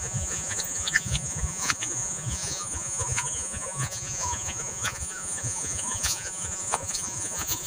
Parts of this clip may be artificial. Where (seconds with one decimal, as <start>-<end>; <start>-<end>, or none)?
0.0-7.7